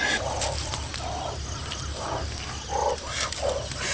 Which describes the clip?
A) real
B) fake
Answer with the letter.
A